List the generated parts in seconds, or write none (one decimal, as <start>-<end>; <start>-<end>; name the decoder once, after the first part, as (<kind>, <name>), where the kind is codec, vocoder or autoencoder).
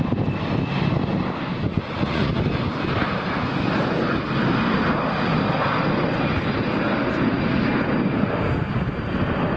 1.7-2.3 (vocoder, Vocos)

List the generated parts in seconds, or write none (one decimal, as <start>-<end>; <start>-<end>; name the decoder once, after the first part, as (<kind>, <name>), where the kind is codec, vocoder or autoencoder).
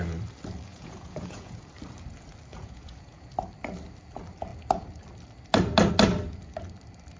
0.7-1.7 (vocoder, Vocos); 2.5-3.2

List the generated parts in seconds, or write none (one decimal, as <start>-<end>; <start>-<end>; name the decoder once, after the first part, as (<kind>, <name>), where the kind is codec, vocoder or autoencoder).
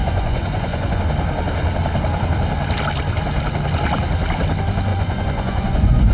0.0-1.0 (vocoder, Vocos); 4.9-6.1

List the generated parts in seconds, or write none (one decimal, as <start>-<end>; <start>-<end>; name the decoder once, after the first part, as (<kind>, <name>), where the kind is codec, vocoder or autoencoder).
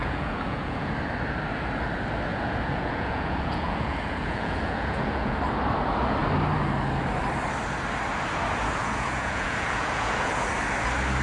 0.0-0.9 (vocoder, Vocos); 2.3-5.4; 8.8-10.3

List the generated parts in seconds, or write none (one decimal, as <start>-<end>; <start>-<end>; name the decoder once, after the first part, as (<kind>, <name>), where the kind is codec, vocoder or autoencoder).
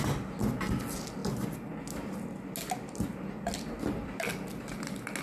none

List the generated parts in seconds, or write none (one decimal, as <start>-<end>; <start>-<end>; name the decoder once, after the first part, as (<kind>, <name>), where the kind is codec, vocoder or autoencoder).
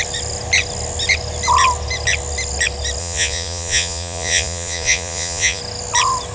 3.0-5.6 (vocoder, Vocos)